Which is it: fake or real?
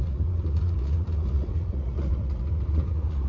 fake